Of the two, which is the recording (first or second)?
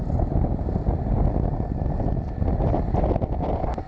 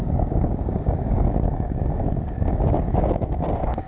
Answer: first